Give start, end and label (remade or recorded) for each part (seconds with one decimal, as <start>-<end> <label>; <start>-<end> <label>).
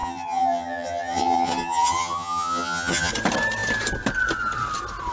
0.0-3.1 remade; 3.1-5.1 recorded